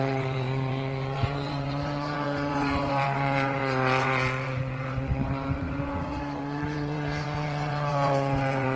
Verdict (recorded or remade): remade